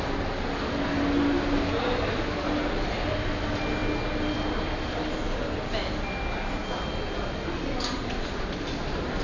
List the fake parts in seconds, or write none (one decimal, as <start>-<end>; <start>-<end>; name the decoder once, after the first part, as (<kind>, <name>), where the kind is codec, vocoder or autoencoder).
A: none